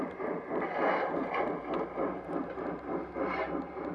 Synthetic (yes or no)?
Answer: no